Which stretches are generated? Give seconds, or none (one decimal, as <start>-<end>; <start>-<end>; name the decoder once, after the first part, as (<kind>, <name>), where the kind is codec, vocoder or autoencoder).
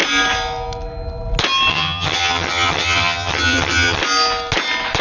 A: 1.7-4.0 (vocoder, HiFi-GAN)